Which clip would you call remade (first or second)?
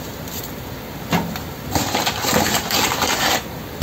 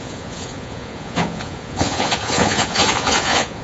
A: second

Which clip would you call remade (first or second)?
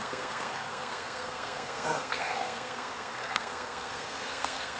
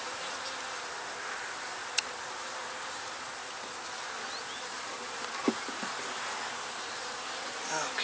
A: first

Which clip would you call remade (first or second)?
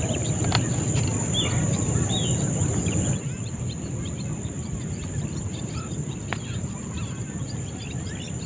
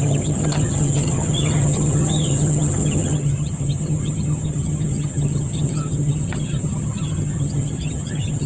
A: second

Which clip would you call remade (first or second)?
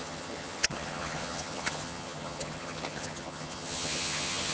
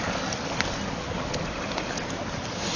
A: first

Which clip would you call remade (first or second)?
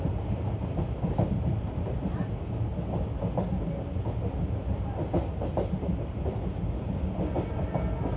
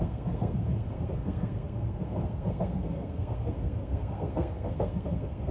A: second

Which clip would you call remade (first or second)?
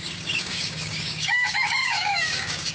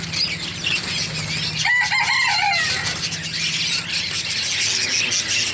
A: first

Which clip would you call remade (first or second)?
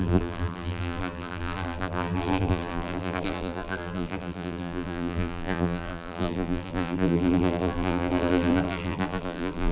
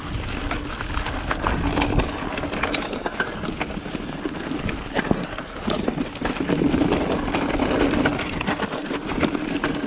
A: first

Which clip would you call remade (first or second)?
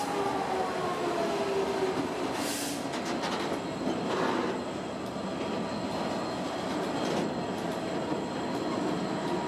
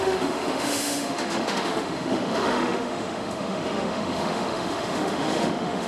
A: second